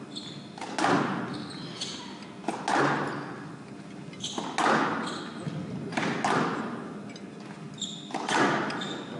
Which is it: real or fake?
real